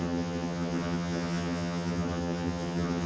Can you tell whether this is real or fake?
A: fake